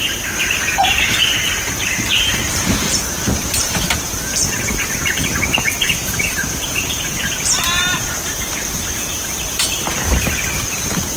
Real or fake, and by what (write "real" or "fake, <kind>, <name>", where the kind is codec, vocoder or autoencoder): fake, vocoder, BigVGAN v2